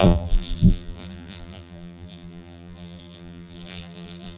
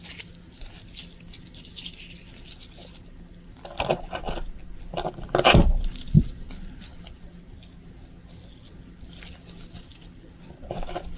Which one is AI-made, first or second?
first